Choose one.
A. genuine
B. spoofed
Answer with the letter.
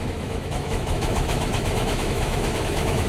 B